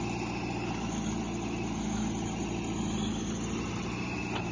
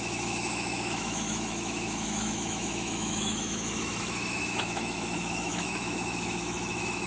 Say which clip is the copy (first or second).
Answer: second